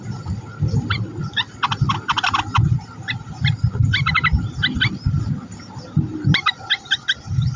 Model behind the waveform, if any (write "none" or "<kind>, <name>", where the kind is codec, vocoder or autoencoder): none